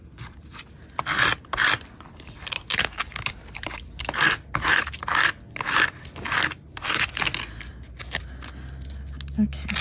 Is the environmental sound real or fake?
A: real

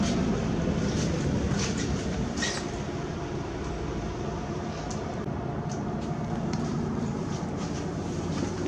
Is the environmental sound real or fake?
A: fake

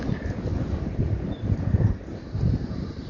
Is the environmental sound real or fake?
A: fake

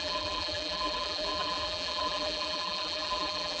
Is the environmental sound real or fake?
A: fake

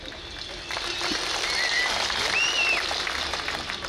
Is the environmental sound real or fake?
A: real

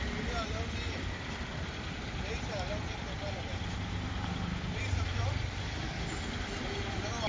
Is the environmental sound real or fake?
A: real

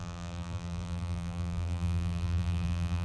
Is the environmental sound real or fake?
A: fake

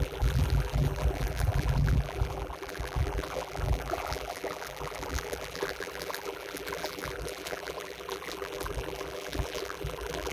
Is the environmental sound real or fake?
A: fake